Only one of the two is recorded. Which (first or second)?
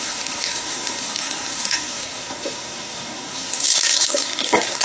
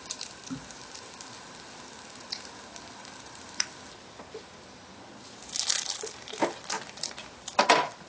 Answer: second